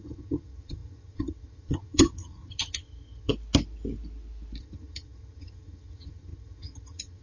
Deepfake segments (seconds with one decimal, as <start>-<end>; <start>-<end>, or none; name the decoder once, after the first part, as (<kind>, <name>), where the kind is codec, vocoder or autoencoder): 0.0-3.3 (vocoder, HiFi-GAN); 4.6-7.2